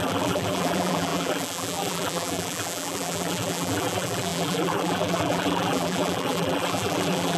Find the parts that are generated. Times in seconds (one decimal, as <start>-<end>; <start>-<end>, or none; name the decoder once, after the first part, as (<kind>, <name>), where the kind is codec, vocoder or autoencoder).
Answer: 0.0-7.4 (vocoder, BigVGAN v2)